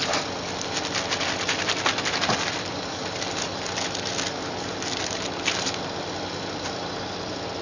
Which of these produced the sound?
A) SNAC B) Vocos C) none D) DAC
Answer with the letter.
C